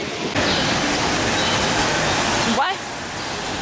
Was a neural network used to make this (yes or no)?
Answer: no